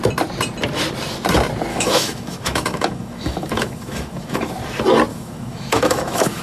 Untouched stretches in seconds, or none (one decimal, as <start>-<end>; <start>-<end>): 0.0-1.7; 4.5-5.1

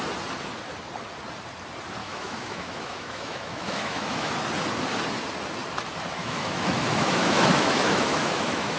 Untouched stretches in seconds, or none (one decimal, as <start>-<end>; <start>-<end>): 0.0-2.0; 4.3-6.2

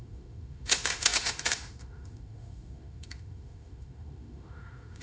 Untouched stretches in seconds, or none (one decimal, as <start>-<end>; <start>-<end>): none